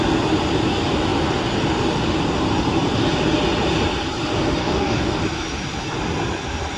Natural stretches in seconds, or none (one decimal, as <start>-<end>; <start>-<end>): 0.0-4.6; 5.2-6.8